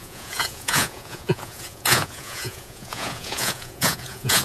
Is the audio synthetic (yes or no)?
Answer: yes